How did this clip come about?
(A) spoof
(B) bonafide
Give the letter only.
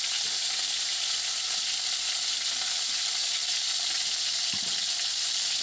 B